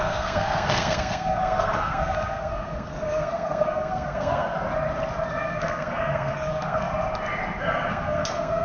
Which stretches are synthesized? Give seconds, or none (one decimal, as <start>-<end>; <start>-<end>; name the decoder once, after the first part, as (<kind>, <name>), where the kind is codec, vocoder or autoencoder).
0.0-4.5 (codec, SNAC); 5.3-6.9; 7.6-8.6